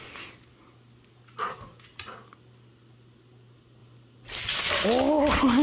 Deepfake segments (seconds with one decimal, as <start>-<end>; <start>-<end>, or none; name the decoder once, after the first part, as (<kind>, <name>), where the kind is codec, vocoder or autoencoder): none